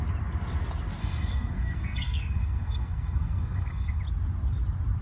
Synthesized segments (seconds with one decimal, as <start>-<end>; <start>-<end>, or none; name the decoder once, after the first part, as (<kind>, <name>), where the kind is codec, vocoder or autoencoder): 1.0-4.0 (codec, SNAC)